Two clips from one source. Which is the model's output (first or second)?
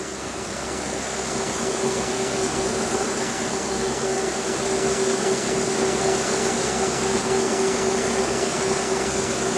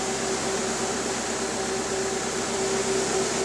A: first